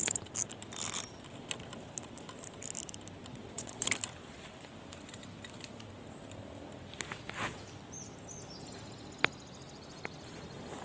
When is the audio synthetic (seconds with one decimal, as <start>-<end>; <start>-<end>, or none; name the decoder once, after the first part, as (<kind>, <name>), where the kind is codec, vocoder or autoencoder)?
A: 3.3-3.9 (vocoder, Vocos)